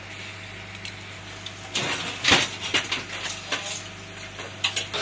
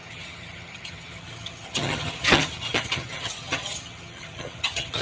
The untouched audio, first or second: first